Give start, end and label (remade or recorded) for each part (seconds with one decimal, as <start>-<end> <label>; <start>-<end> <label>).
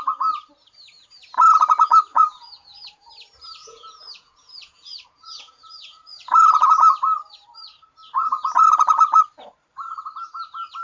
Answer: 0.0-2.1 recorded; 2.1-3.1 remade; 3.1-3.6 recorded; 3.6-6.7 remade; 6.7-10.8 recorded